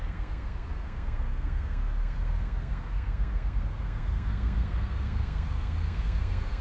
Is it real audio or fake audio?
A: fake